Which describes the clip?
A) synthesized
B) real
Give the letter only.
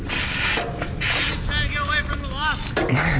B